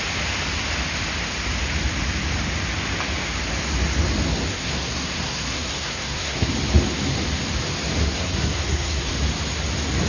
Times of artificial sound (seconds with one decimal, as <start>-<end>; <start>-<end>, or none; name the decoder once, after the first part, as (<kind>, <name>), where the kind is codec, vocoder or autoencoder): 4.5-6.5 (codec, SNAC); 8.0-9.1